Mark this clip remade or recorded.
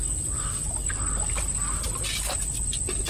recorded